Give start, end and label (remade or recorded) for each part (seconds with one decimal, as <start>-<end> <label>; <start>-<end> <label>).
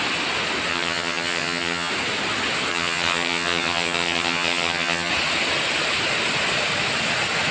0.0-0.7 recorded; 0.7-1.9 remade; 1.9-2.7 recorded; 2.7-5.1 remade; 5.1-7.5 recorded